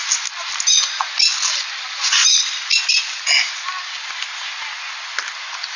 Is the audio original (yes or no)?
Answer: yes